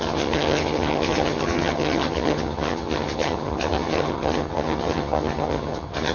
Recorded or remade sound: remade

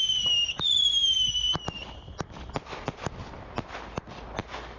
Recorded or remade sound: recorded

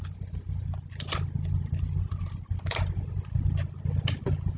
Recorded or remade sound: recorded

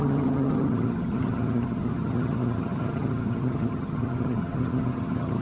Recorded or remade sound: remade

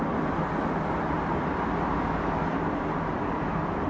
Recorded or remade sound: recorded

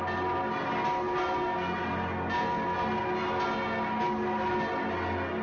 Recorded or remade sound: recorded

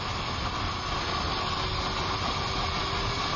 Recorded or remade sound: recorded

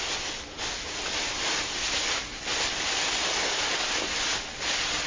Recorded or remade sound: recorded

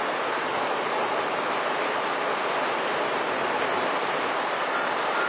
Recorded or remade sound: recorded